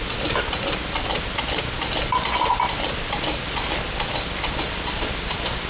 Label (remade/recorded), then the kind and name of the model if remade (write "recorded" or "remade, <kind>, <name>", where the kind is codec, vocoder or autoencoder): recorded